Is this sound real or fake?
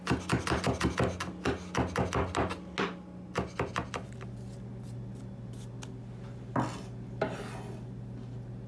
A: real